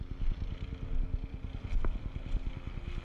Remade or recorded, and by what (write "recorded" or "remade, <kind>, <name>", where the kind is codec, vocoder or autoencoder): remade, vocoder, BigVGAN v2